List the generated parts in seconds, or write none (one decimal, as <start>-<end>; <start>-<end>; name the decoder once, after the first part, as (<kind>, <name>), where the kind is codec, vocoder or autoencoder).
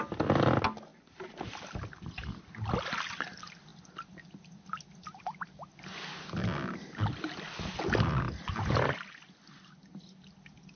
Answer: 0.9-1.5 (vocoder, BigVGAN v2)